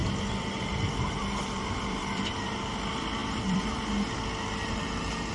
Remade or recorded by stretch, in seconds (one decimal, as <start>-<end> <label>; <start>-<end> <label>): 0.0-2.3 remade; 2.3-3.2 recorded; 3.2-3.7 remade; 3.7-5.3 recorded